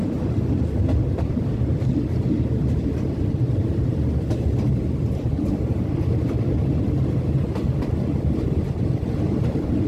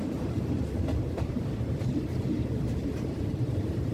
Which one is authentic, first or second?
first